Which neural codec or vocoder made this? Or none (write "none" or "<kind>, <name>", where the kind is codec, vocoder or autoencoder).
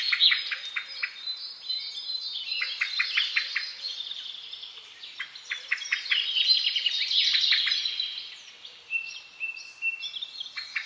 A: none